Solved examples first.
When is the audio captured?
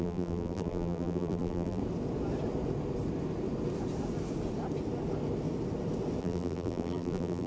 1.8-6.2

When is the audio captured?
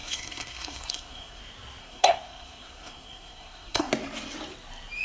1.4-1.8; 3.9-5.0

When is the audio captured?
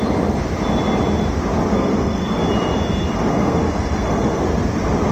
0.0-1.7; 2.4-3.3; 4.4-5.1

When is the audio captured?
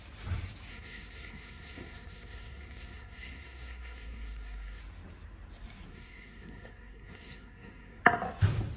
0.0-0.7; 4.8-5.9; 8.0-8.8